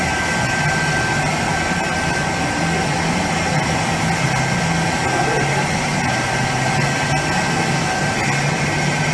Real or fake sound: real